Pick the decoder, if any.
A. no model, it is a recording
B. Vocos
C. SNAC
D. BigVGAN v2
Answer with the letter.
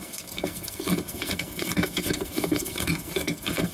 C